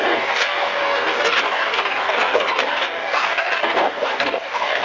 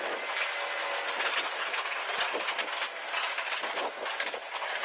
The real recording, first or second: second